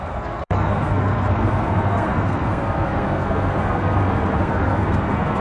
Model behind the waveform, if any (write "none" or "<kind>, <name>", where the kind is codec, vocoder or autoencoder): codec, SNAC